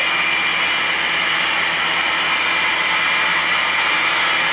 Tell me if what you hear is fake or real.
real